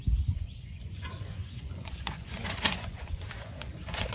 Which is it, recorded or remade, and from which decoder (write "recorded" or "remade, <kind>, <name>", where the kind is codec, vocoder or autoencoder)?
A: remade, vocoder, Vocos